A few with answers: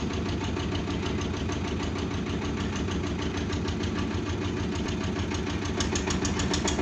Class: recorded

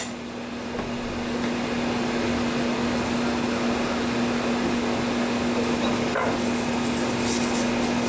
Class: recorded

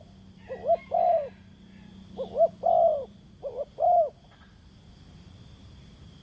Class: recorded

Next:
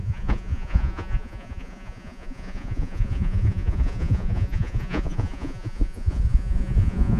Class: remade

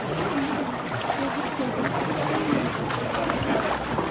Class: recorded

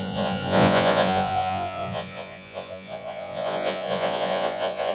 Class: remade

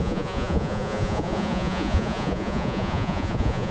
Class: remade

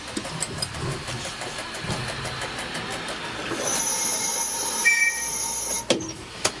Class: recorded